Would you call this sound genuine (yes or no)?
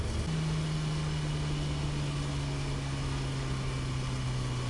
yes